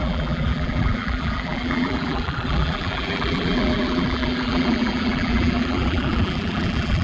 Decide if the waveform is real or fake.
fake